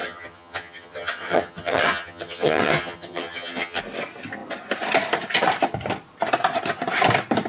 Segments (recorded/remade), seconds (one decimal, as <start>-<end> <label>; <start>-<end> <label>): 0.0-3.8 remade; 3.8-7.5 recorded

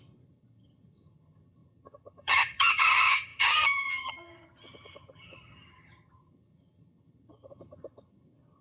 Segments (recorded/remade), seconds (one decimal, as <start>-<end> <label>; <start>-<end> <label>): 0.0-8.6 remade

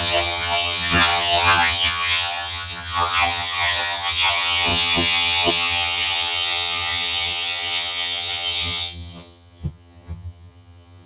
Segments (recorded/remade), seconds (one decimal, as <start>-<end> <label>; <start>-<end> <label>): 0.0-11.1 remade

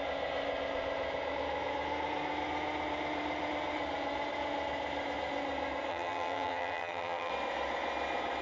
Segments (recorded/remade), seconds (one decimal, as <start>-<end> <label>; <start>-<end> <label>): 0.0-5.9 recorded; 5.9-7.3 remade; 7.3-8.4 recorded